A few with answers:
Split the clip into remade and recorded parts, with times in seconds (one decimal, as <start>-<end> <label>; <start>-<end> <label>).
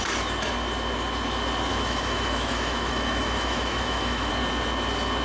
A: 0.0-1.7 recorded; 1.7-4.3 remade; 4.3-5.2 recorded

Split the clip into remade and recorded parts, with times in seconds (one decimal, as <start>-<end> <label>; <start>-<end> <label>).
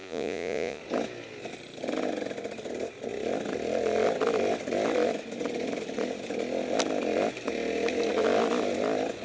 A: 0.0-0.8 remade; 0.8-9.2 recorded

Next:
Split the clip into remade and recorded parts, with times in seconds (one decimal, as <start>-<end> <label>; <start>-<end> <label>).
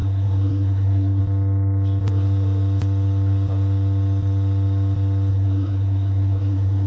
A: 0.0-1.2 remade; 1.2-5.3 recorded; 5.3-6.9 remade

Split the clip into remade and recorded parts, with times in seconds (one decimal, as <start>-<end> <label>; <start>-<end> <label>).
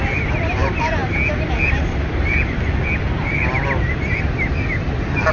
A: 0.0-5.3 recorded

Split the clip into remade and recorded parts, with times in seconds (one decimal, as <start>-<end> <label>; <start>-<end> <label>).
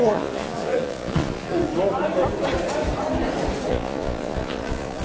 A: 0.0-1.7 remade; 1.7-3.7 recorded; 3.7-5.0 remade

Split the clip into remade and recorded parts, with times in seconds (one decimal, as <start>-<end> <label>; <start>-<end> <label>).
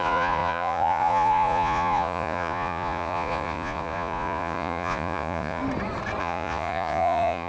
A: 0.0-5.6 remade; 5.6-6.2 recorded; 6.2-7.5 remade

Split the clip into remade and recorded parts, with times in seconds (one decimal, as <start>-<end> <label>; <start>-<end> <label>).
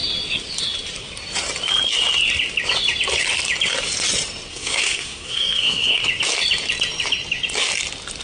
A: 0.0-4.5 recorded; 4.5-6.0 remade; 6.0-8.2 recorded